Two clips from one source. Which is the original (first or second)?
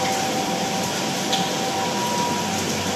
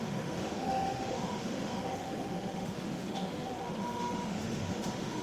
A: first